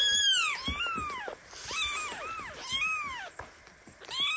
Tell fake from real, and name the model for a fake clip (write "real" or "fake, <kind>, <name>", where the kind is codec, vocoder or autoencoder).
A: real